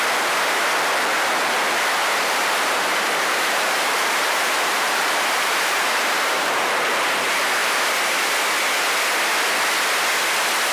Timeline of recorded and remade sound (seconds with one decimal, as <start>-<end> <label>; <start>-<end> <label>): 0.0-2.0 recorded; 2.0-6.8 remade; 6.8-7.6 recorded; 7.6-8.3 remade; 8.3-10.7 recorded